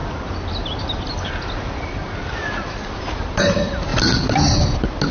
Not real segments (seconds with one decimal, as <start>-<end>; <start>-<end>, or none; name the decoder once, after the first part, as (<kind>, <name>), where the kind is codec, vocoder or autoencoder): 0.0-3.0 (vocoder, BigVGAN v2)